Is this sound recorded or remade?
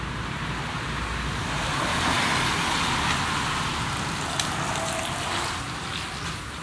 recorded